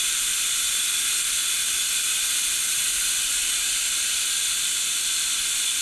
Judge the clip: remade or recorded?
remade